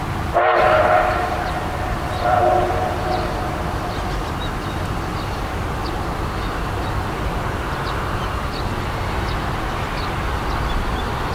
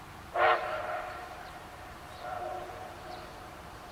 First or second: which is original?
first